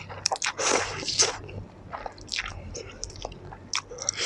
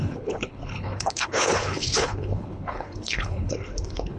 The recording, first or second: first